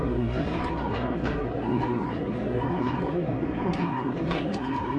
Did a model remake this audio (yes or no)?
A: yes